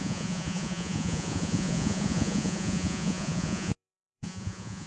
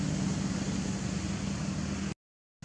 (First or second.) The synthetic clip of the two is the first